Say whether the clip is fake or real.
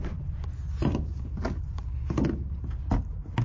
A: real